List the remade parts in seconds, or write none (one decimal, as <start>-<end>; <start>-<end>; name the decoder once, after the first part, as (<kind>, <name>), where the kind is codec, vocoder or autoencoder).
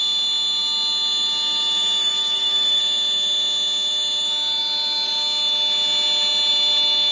2.0-2.8 (codec, DAC)